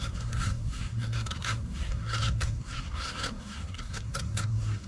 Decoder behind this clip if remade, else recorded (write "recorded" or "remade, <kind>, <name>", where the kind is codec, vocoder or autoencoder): remade, codec, SNAC